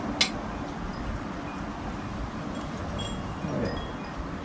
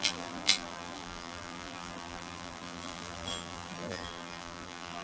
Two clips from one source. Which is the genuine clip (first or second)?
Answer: first